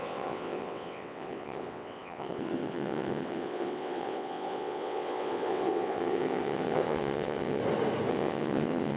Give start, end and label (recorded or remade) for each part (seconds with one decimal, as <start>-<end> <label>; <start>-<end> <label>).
0.0-7.6 remade; 7.6-8.1 recorded; 8.1-9.0 remade